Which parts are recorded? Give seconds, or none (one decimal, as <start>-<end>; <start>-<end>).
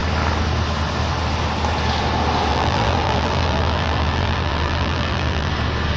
0.0-2.5; 5.5-6.0